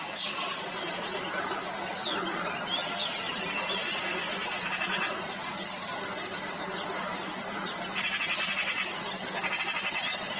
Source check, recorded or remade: recorded